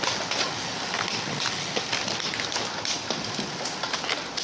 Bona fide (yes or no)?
yes